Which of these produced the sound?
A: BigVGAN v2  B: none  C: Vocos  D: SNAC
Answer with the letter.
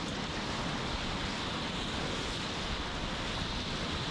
B